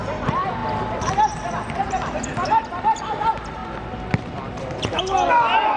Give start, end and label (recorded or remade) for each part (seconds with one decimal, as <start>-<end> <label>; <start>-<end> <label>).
0.0-5.8 recorded